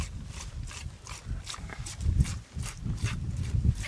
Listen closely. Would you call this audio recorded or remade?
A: recorded